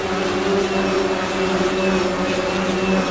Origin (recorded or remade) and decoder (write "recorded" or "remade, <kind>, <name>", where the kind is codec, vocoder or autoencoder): recorded